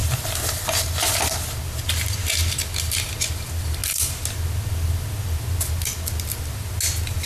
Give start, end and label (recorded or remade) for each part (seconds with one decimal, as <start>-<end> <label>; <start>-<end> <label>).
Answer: 0.0-7.3 recorded